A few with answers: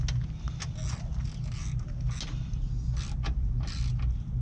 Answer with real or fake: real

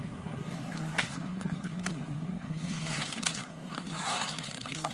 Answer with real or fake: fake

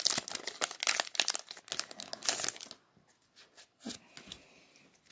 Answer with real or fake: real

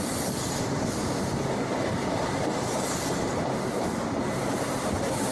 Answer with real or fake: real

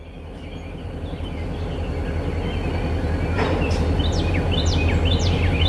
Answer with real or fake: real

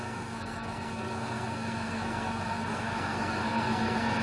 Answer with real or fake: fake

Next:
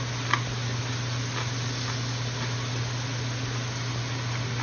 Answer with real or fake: real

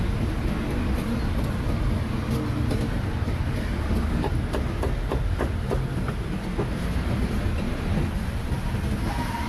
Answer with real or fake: real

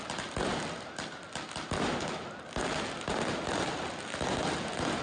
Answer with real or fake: real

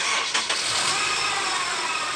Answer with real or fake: real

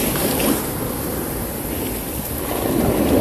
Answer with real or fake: real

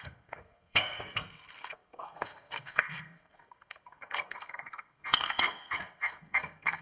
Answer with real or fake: fake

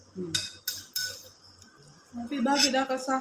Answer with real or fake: real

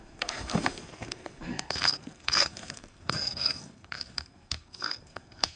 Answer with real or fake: fake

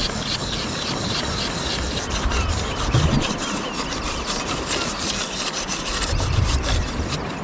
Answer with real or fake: real